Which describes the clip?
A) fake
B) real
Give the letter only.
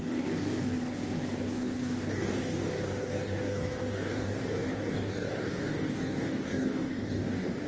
A